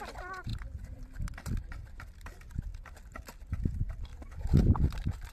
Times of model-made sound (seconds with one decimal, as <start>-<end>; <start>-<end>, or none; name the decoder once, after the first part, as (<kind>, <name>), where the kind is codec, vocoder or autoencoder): 0.0-2.7 (vocoder, BigVGAN v2); 3.5-5.3